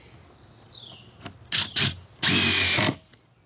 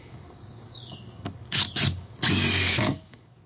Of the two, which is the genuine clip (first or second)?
first